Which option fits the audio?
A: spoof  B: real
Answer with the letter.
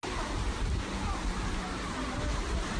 B